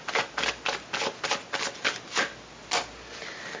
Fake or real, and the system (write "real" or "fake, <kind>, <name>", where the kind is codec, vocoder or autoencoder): real